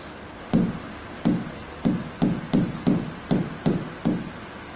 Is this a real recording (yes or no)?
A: yes